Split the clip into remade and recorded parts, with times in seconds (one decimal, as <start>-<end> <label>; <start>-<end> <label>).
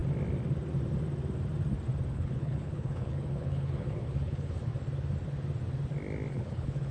0.0-2.1 recorded; 2.1-4.7 remade; 4.7-6.3 recorded; 6.3-6.9 remade